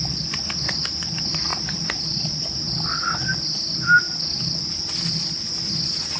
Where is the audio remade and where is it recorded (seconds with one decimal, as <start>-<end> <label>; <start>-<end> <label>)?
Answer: 0.0-6.2 recorded

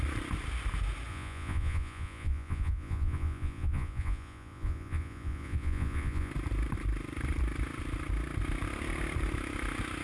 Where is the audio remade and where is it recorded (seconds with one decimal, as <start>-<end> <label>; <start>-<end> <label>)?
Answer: 0.0-1.1 recorded; 1.1-6.3 remade; 6.3-10.0 recorded

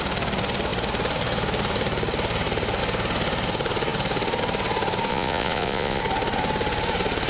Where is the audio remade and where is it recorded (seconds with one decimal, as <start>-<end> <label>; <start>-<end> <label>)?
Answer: 0.0-5.1 recorded; 5.1-6.0 remade; 6.0-7.3 recorded

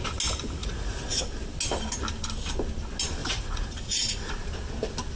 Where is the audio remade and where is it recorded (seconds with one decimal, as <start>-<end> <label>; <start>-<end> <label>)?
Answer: 0.0-0.6 recorded; 0.6-1.2 remade; 1.2-3.2 recorded; 3.2-4.3 remade; 4.3-5.2 recorded

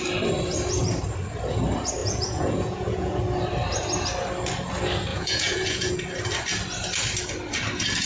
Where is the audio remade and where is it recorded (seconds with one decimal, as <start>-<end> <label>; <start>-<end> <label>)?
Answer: 0.0-2.0 recorded; 2.0-3.2 remade; 3.2-5.1 recorded; 5.1-5.9 remade; 5.9-8.1 recorded

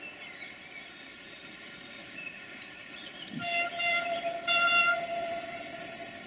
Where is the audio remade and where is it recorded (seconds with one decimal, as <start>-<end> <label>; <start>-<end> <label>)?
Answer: 0.0-1.1 recorded; 1.1-3.1 remade; 3.1-6.3 recorded